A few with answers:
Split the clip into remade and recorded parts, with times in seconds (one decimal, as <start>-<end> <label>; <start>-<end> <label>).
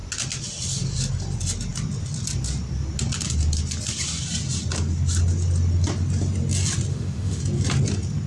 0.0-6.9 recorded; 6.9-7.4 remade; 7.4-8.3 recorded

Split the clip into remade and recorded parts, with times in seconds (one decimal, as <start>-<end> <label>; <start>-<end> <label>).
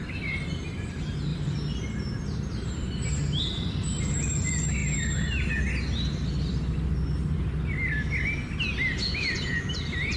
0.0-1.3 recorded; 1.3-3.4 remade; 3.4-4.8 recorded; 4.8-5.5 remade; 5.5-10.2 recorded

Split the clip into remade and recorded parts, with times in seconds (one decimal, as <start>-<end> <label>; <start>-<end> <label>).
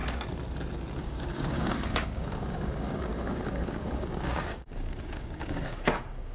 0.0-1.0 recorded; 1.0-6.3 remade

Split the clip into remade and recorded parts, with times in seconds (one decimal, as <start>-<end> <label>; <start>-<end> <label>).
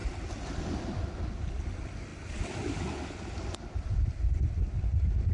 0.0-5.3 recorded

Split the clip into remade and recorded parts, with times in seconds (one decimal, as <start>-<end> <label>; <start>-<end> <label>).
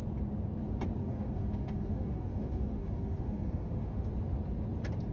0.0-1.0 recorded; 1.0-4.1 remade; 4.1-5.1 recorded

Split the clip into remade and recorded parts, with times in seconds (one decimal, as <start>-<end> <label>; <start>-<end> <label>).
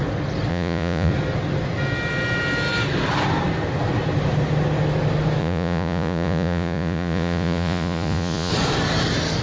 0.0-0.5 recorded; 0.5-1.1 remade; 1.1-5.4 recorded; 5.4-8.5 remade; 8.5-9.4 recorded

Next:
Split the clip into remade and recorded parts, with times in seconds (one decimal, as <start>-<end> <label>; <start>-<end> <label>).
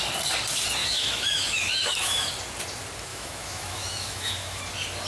0.0-0.8 recorded; 0.8-2.3 remade; 2.3-3.1 recorded; 3.1-4.6 remade; 4.6-5.1 recorded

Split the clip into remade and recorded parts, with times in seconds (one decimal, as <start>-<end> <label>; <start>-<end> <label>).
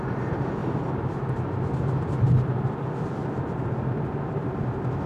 0.0-5.1 recorded